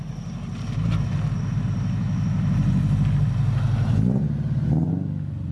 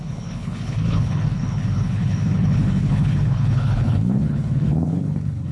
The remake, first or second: second